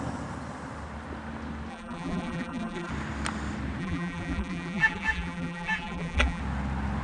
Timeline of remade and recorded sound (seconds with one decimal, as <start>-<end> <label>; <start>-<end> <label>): 0.0-1.7 recorded; 1.7-2.9 remade; 2.9-3.8 recorded; 3.8-6.4 remade; 6.4-7.0 recorded